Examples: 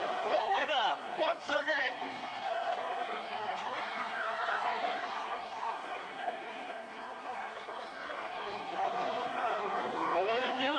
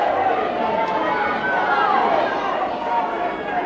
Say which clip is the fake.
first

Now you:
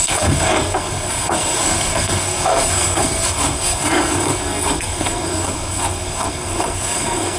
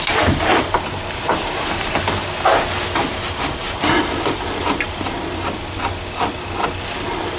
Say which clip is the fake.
first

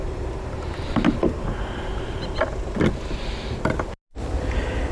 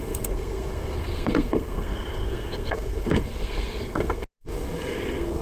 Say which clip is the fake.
second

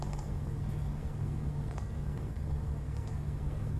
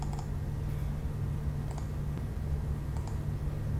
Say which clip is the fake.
first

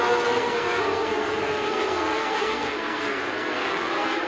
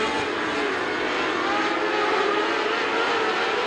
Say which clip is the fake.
first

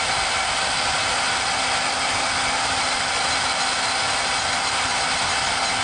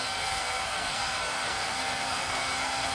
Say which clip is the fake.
second